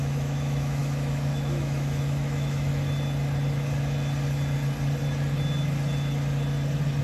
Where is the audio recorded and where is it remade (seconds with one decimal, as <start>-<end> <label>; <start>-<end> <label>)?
0.0-2.7 remade; 2.7-7.0 recorded